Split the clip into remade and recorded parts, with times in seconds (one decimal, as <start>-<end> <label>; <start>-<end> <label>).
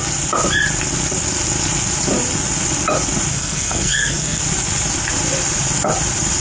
0.0-3.3 recorded; 3.3-4.4 remade; 4.4-6.4 recorded